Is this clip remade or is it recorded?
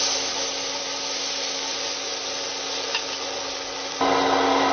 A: recorded